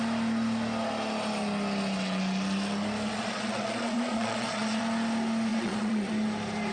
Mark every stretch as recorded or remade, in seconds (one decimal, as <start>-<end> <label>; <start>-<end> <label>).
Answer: 0.0-3.1 recorded; 3.1-4.8 remade; 4.8-5.5 recorded; 5.5-6.1 remade; 6.1-6.7 recorded